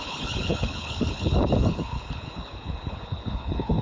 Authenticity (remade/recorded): remade